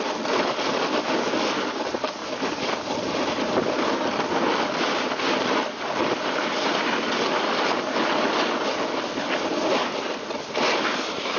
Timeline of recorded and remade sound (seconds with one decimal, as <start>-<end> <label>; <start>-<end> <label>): 0.0-11.4 recorded